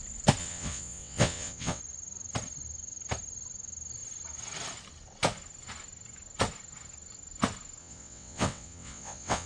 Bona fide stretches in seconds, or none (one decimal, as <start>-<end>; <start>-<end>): 0.0-0.4; 1.8-7.8